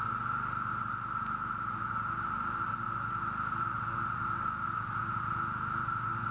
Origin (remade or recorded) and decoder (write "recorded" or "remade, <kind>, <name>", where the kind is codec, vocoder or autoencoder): recorded